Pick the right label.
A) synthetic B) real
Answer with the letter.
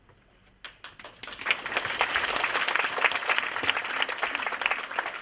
B